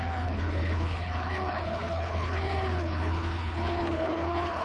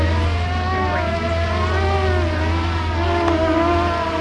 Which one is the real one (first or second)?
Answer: second